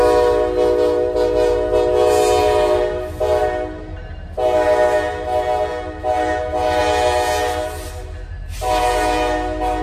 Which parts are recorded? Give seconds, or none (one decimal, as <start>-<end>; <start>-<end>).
0.0-9.8